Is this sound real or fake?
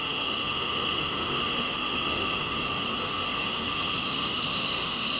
fake